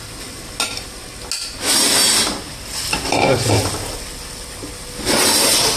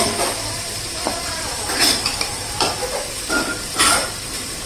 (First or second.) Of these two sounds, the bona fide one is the first